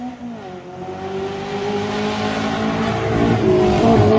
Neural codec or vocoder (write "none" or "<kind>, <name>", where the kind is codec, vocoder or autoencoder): none